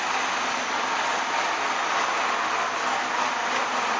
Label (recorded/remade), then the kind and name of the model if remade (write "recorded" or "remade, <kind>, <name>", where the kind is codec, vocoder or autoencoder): recorded